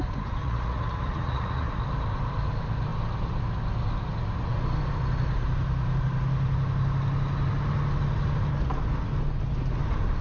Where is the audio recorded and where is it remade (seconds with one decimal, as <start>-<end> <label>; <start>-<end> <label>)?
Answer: 0.0-0.4 recorded; 0.4-1.8 remade; 1.8-10.2 recorded